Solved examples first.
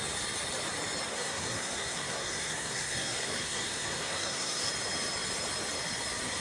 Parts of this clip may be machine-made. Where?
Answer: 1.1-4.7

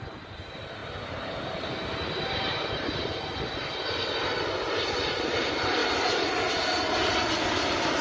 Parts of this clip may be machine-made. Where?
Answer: none

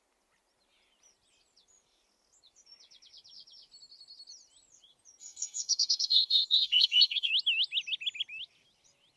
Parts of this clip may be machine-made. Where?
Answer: 5.2-7.3

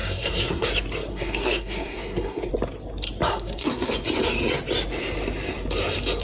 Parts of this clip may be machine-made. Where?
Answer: 0.0-0.7; 1.1-2.5; 3.3-3.9

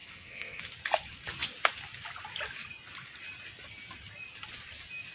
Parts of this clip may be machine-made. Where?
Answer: 0.0-0.6

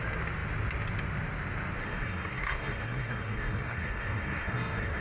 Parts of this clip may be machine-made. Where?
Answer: 1.8-5.0